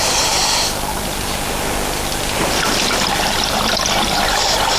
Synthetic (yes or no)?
no